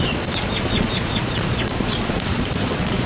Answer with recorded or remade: remade